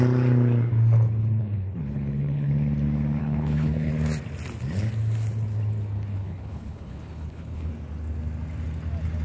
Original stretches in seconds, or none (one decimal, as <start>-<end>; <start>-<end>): 0.0-1.2; 2.5-3.2; 3.9-6.1; 7.7-9.2